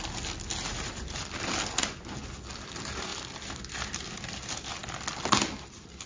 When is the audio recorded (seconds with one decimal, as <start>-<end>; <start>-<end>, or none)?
0.0-3.1; 3.8-6.1